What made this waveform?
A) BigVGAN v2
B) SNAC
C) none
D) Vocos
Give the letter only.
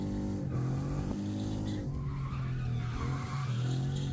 C